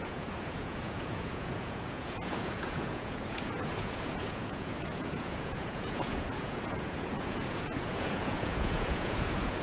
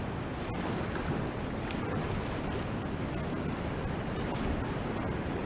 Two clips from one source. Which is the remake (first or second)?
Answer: first